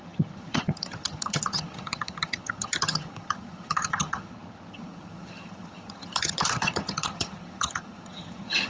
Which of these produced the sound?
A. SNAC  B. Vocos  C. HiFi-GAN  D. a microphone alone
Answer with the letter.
C